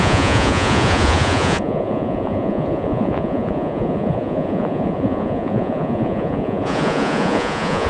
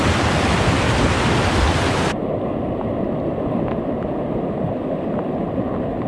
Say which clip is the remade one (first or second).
first